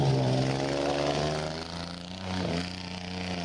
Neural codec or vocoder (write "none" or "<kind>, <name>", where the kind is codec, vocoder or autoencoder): none